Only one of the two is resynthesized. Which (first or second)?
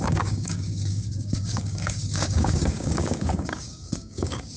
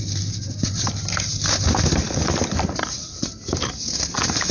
first